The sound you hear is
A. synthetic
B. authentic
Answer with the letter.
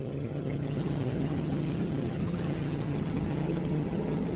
A